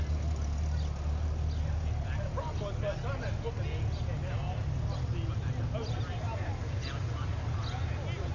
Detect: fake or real real